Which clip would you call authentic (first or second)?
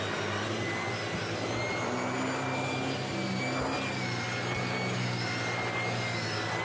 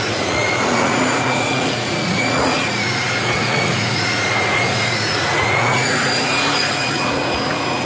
first